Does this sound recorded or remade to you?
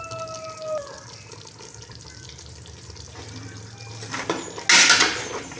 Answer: recorded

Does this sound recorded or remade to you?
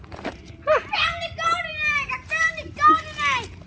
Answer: recorded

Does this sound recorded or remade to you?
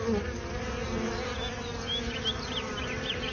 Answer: recorded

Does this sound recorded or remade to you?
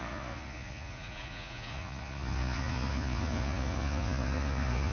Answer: remade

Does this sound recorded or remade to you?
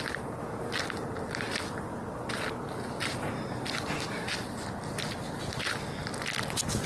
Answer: recorded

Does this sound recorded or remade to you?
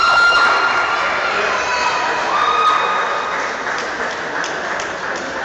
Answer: recorded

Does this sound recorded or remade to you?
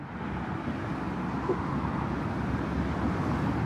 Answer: recorded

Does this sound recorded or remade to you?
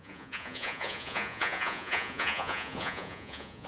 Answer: remade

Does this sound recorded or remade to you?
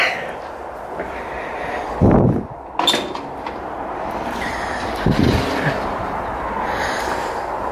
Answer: recorded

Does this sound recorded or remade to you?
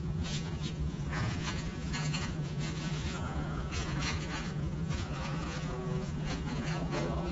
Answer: remade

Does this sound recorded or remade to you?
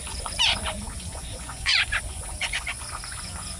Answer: remade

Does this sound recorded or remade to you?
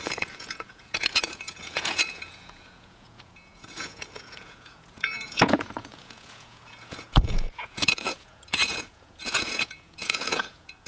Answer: remade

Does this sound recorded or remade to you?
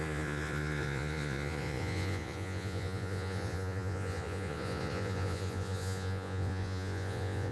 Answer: remade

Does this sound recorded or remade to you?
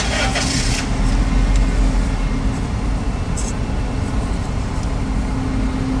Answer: recorded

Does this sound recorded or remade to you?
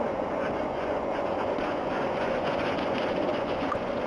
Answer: remade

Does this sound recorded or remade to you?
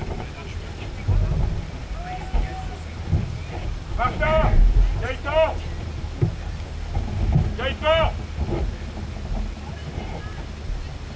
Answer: recorded